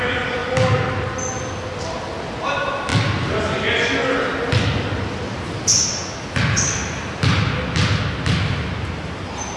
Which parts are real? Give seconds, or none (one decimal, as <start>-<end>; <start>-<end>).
0.0-9.6